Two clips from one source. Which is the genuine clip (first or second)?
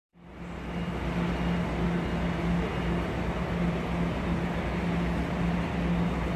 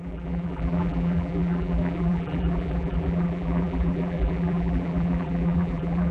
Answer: first